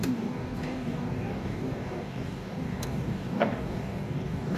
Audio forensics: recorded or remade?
remade